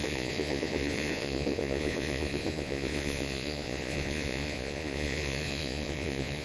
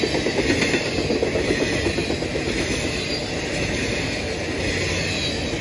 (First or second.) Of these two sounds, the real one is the second